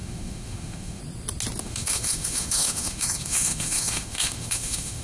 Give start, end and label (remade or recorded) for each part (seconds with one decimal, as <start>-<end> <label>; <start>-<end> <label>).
0.0-1.0 remade; 1.0-1.6 recorded; 1.6-5.0 remade